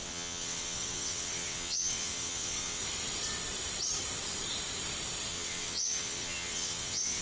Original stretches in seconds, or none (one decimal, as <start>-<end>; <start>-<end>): 2.8-5.3